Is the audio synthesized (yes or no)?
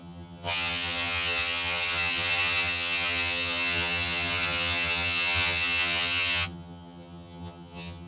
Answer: yes